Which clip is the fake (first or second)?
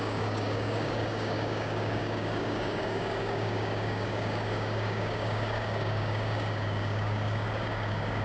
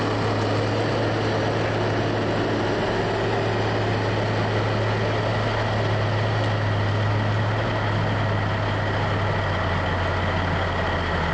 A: first